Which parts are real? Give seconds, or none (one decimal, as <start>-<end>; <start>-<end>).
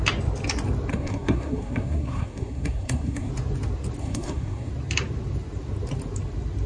0.0-0.9; 3.3-4.0; 4.7-6.7